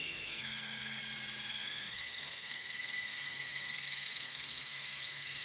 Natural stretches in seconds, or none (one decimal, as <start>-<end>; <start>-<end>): 1.0-1.5